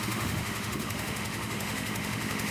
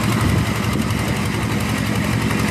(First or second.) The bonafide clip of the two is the second